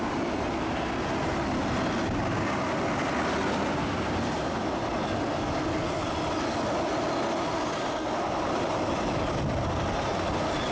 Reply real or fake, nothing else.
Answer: real